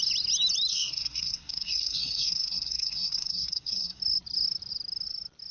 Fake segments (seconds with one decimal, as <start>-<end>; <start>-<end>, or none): 0.7-4.0